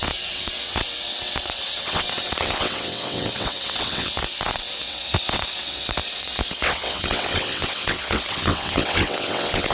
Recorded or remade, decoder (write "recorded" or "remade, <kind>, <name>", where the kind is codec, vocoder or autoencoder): remade, vocoder, WaveNeXt